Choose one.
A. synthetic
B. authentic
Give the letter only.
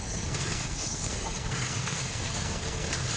A